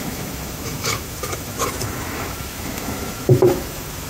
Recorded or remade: remade